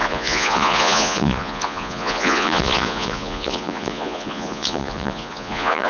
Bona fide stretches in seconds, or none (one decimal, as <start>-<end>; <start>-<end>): none